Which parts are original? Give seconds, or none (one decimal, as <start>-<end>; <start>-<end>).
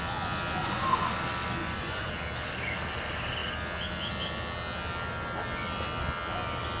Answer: 0.0-0.6; 1.1-1.6; 2.1-6.8